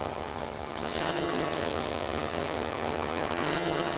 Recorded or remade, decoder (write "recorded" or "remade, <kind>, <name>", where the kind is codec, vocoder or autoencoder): remade, vocoder, HiFi-GAN